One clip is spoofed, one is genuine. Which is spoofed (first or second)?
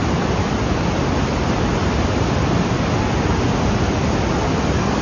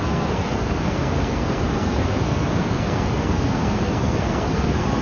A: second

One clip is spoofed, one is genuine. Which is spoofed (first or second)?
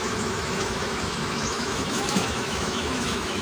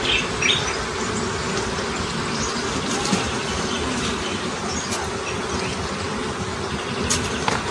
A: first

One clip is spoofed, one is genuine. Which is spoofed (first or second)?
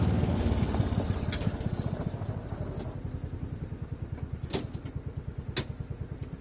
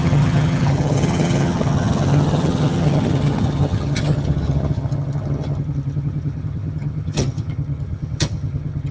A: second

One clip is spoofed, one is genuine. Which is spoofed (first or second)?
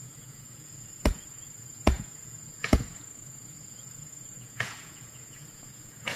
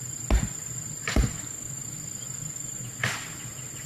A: first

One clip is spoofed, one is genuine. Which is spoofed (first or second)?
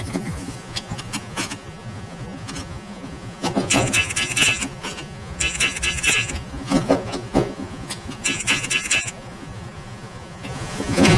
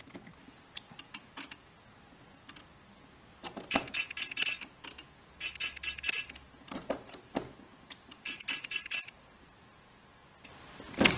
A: first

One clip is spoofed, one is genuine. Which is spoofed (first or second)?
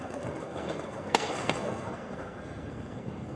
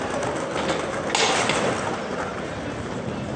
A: first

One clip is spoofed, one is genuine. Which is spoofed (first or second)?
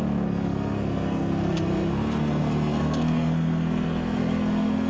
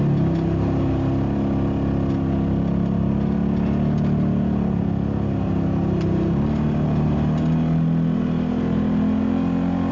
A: first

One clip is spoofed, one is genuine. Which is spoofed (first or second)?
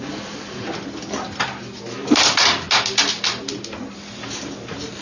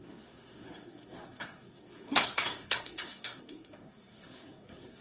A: second